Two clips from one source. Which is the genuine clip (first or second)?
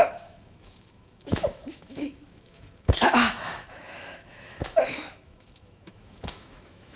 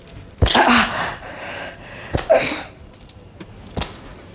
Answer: second